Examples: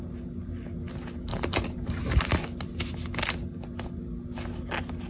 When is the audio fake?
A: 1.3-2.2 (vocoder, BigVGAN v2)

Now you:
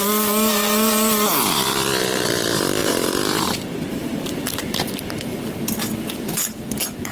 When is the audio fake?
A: 2.8-4.6 (vocoder, BigVGAN v2)